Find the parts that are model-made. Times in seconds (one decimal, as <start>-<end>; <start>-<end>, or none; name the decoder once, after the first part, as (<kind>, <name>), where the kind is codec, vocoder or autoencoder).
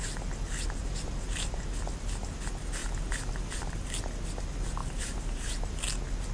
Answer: 0.8-1.6 (vocoder, BigVGAN v2); 4.8-5.7